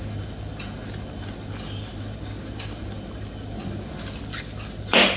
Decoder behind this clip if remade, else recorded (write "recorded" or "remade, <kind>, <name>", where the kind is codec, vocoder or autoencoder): recorded